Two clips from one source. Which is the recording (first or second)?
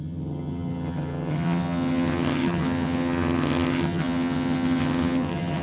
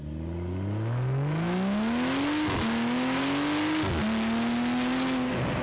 second